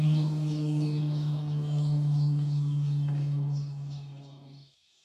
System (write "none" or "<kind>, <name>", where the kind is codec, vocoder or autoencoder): codec, DAC